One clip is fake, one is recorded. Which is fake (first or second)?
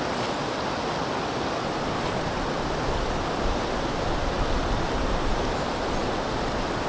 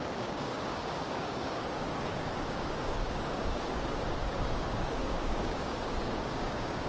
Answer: second